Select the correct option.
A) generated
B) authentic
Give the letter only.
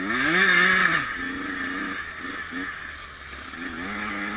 B